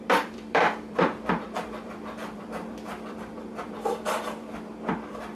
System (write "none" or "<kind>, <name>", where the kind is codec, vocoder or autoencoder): vocoder, BigVGAN v2